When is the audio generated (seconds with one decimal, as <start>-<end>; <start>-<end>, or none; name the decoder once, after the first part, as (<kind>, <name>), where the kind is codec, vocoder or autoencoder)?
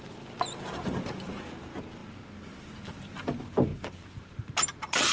3.7-4.5 (vocoder, BigVGAN v2)